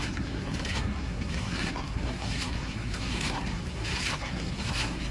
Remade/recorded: remade